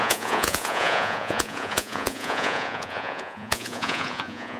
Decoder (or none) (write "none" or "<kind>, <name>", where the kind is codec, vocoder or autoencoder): vocoder, Vocos